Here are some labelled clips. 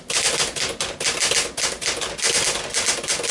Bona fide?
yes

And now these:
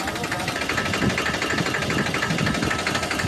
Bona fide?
yes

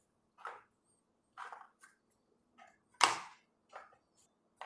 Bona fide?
yes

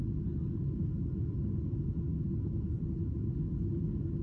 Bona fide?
yes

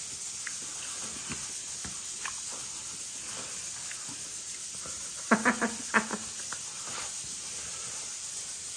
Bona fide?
yes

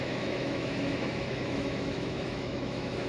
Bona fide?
no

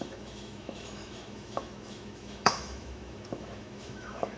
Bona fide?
no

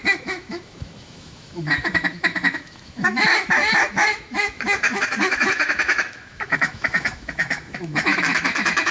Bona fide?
no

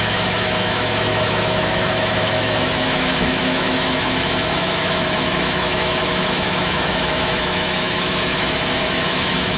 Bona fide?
no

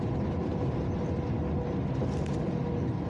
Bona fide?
yes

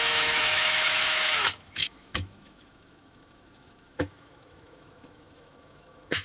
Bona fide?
no